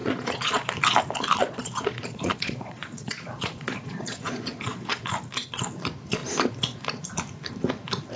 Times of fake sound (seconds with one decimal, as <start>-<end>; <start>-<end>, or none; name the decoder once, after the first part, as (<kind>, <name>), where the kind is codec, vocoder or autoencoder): 0.0-0.7 (vocoder, Vocos); 1.4-5.1